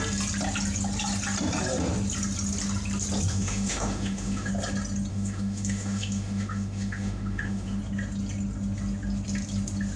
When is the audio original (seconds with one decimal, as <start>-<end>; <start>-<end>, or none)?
0.0-3.3; 4.5-5.1; 7.8-10.0